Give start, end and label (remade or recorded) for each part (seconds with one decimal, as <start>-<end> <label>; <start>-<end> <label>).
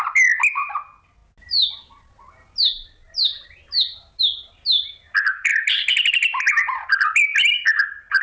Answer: 0.0-8.2 recorded